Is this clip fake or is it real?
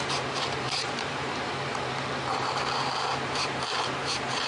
fake